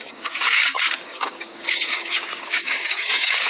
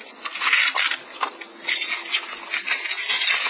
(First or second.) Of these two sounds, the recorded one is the second